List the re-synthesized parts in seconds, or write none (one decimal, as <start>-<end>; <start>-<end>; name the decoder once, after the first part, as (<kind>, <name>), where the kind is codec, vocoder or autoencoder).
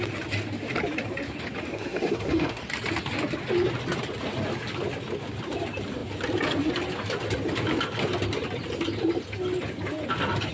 1.7-2.6 (codec, SNAC)